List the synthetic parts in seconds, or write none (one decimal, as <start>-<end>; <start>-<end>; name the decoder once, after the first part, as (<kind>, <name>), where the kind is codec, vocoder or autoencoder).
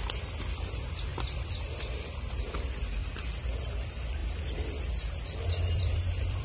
0.0-3.0 (vocoder, BigVGAN v2); 3.6-4.2; 5.5-6.4